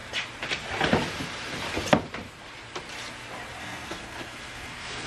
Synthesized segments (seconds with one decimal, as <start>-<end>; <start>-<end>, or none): 3.6-5.1